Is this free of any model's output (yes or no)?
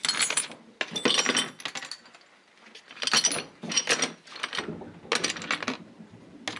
yes